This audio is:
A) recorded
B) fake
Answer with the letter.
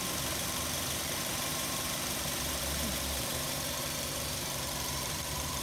B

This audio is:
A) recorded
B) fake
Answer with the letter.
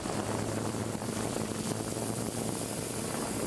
A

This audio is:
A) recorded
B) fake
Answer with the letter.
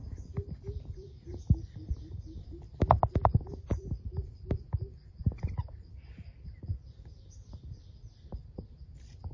B